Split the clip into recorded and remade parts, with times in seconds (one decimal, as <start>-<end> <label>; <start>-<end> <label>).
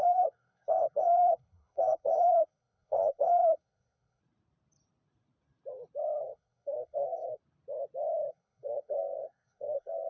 0.0-4.2 remade; 4.2-6.2 recorded; 6.2-7.4 remade; 7.4-8.3 recorded; 8.3-10.1 remade